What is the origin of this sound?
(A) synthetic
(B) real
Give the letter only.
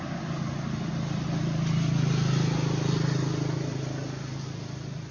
B